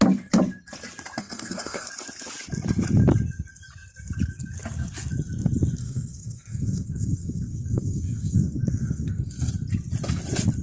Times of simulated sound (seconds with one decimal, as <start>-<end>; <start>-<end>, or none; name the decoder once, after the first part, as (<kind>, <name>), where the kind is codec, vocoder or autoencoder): 1.2-1.9 (codec, SNAC); 5.8-9.5